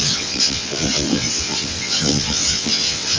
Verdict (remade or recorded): remade